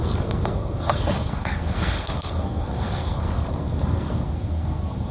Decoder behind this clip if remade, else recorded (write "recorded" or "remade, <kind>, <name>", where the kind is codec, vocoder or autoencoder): remade, codec, SNAC